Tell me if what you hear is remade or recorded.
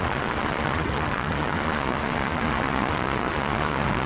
remade